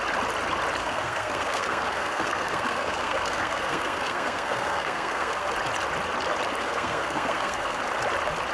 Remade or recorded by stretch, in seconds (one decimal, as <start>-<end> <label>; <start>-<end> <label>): 0.0-0.8 recorded; 0.8-5.5 remade; 5.5-6.6 recorded; 6.6-7.8 remade; 7.8-8.5 recorded